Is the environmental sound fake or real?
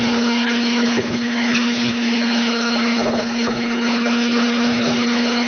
fake